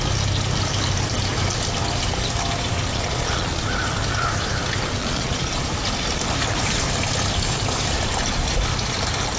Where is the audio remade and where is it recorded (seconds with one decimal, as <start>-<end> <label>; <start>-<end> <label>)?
0.0-2.9 recorded; 2.9-3.6 remade; 3.6-5.0 recorded; 5.0-5.5 remade; 5.5-9.4 recorded